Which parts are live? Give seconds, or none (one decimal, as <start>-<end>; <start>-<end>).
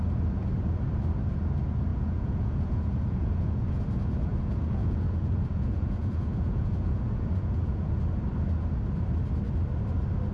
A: 0.0-1.9; 3.8-4.3; 8.0-10.3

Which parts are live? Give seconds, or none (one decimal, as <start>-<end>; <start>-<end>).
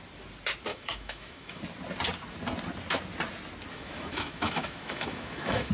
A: 0.0-0.7; 1.6-3.7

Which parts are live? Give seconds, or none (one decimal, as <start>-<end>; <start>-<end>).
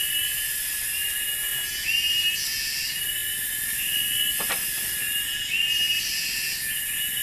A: 0.0-7.2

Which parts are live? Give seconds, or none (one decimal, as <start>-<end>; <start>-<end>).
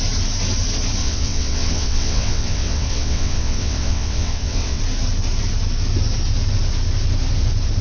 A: 0.0-1.0; 4.8-7.8